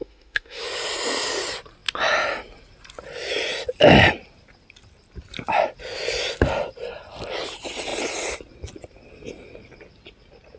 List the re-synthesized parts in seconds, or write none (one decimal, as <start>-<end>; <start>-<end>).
0.0-0.6